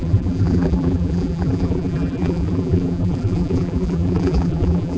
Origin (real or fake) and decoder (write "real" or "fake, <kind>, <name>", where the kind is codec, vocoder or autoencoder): fake, vocoder, BigVGAN v2